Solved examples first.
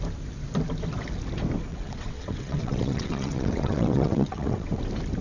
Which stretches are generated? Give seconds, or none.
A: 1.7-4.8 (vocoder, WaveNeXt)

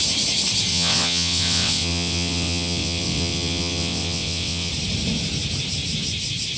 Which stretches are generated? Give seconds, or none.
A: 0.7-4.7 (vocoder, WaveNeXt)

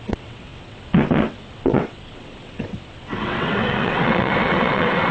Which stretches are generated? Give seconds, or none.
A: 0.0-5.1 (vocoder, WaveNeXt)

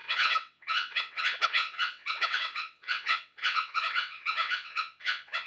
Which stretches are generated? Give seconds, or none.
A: 0.0-5.5 (vocoder, WaveNeXt)

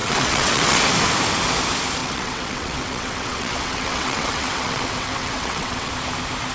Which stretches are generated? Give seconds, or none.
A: 0.0-0.8 (vocoder, WaveNeXt); 2.0-5.9

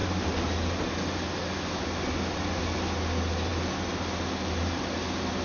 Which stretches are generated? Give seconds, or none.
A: none

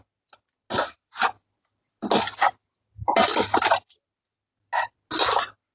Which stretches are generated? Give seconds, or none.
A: none

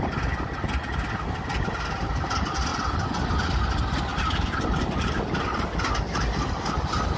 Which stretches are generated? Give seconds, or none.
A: none